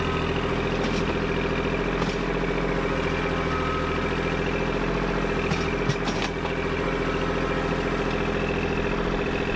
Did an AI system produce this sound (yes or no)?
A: no